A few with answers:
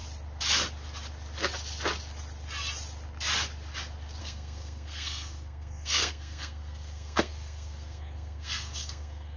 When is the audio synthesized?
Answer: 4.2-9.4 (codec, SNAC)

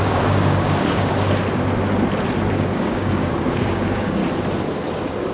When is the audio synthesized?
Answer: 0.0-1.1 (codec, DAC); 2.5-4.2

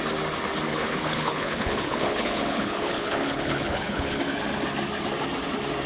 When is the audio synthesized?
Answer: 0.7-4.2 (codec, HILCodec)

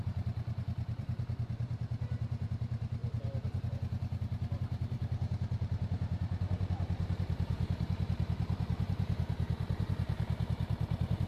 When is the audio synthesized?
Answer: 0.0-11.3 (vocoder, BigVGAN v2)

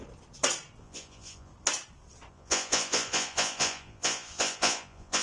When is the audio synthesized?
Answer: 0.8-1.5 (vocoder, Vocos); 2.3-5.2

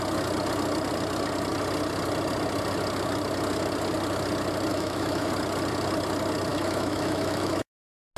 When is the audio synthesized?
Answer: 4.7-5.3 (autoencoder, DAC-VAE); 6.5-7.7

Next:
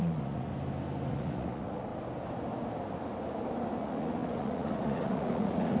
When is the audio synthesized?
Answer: 0.0-0.5 (vocoder, Vocos); 1.1-1.9; 3.8-5.8

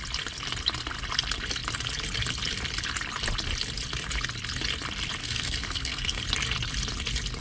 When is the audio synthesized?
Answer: 5.2-6.2 (codec, SNAC)